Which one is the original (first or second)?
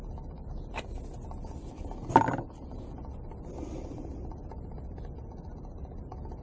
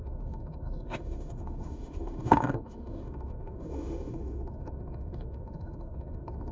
first